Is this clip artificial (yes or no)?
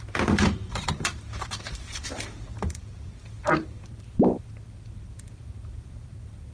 yes